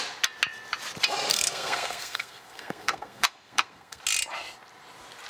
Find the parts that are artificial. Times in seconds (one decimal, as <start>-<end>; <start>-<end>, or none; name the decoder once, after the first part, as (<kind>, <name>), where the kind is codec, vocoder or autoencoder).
1.3-4.0 (codec, SNAC)